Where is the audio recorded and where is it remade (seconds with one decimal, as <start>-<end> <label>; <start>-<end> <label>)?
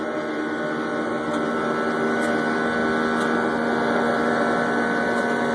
0.0-5.5 recorded